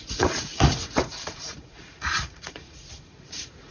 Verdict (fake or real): fake